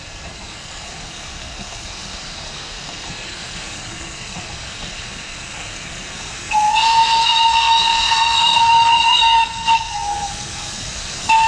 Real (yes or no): no